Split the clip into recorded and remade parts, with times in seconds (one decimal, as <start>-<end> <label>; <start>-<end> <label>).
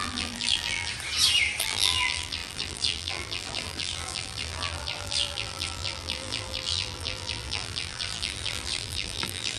0.0-0.9 remade; 0.9-1.6 recorded; 1.6-9.6 remade